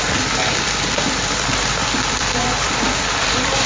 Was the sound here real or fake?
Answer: fake